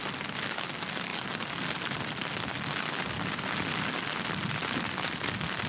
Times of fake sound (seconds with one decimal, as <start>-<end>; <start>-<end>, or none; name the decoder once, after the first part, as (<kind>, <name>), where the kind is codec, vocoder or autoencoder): none